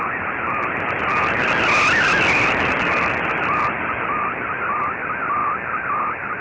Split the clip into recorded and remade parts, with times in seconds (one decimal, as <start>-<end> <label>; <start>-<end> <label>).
0.0-6.4 recorded